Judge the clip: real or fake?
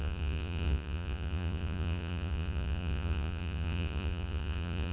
fake